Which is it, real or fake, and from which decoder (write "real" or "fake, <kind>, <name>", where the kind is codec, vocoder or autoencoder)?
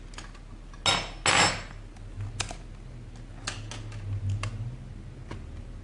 real